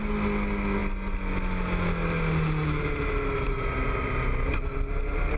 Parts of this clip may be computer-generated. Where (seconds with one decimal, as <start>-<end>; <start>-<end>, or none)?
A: none

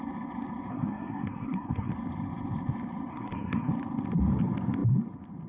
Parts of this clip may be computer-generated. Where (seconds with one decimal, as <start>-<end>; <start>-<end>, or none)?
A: 0.7-1.9; 3.1-3.7

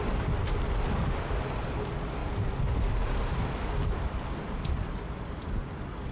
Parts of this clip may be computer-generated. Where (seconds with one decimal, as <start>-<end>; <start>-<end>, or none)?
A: none

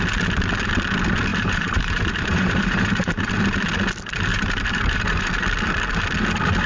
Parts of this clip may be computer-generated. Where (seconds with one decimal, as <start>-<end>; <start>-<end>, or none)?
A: 1.3-3.3; 4.3-5.3

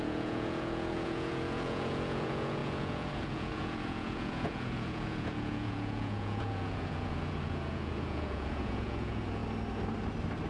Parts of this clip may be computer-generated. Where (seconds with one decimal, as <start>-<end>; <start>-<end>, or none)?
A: 0.0-9.4

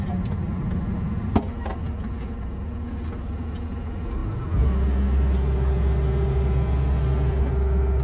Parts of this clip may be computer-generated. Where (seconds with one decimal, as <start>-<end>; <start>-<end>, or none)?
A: none

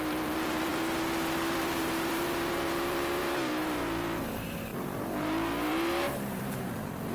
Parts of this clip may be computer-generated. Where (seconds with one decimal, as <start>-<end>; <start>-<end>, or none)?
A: 0.0-7.1